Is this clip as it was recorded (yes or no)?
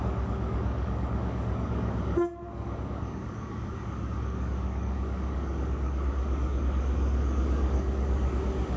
no